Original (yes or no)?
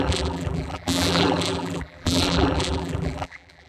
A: no